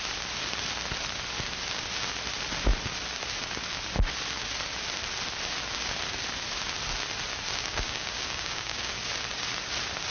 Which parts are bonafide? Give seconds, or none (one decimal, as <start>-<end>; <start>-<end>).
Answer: 0.0-7.5; 8.9-10.1